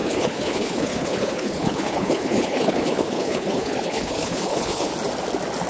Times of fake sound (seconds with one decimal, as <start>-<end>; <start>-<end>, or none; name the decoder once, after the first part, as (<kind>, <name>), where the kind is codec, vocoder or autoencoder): 0.0-4.9 (codec, HILCodec)